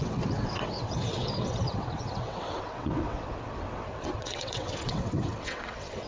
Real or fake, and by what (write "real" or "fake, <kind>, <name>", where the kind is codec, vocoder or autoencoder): fake, vocoder, WaveNeXt